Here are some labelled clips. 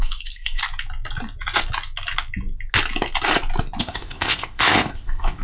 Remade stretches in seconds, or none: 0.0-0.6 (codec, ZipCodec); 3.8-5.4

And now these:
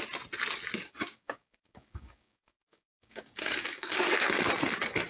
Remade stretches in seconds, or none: 0.8-3.9 (codec, DAC)

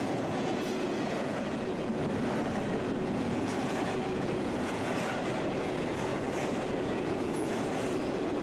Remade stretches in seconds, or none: 0.0-1.9 (vocoder, Vocos); 2.8-4.9; 5.6-8.4

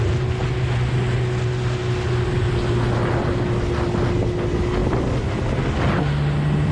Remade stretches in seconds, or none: none